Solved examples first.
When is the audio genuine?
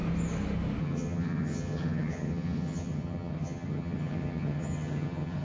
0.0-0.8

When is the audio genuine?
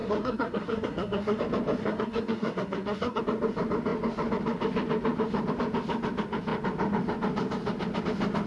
1.4-1.8; 3.2-8.5